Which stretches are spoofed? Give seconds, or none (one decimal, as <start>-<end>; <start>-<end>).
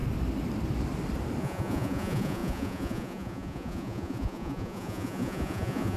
1.4-6.0